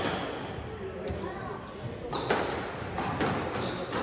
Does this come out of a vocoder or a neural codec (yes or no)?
no